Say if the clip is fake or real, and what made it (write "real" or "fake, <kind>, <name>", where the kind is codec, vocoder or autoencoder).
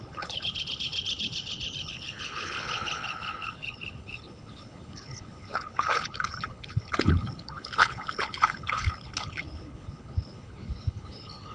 fake, codec, HILCodec